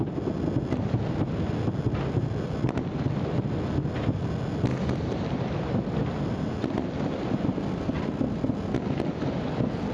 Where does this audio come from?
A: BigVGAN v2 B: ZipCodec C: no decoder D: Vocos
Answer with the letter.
C